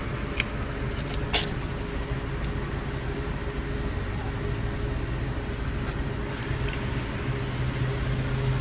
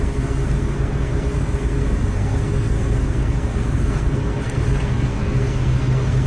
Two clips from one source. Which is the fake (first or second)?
second